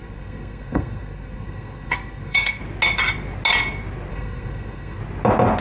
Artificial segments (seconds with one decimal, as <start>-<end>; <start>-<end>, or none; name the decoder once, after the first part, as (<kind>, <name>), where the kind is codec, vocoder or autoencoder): 0.0-2.6 (codec, SNAC); 4.1-5.0